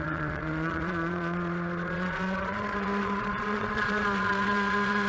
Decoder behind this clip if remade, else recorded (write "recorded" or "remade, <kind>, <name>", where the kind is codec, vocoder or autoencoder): remade, vocoder, Vocos